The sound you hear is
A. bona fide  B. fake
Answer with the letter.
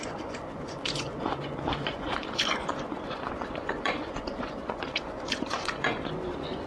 B